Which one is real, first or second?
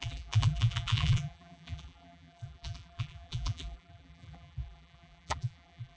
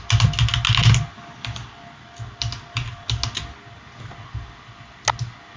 second